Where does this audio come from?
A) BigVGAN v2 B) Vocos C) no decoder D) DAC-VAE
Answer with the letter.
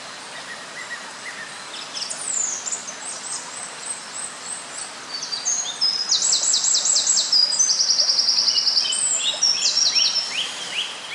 C